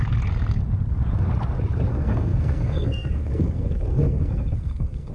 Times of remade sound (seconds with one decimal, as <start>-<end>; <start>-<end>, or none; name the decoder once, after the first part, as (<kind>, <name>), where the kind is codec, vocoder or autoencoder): 1.9-5.1 (codec, SNAC)